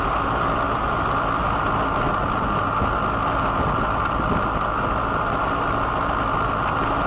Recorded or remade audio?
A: recorded